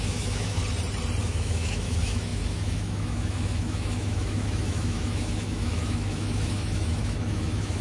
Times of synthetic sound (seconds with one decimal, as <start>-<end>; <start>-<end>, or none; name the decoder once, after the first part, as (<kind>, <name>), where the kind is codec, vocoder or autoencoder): 0.0-0.6 (autoencoder, DAC-VAE); 1.2-7.8